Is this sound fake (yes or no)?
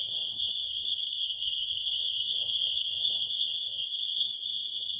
yes